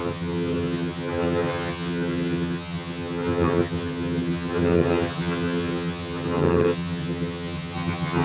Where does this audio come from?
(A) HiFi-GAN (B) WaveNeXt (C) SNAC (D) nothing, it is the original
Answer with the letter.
A